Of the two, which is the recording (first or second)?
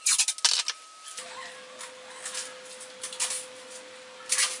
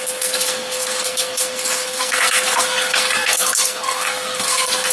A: first